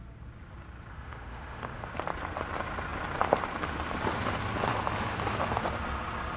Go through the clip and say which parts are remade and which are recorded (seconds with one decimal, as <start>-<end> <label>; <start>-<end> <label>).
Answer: 0.0-0.9 recorded; 0.9-1.9 remade; 1.9-6.4 recorded